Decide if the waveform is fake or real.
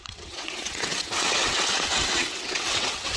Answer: fake